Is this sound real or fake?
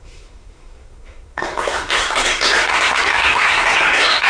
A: fake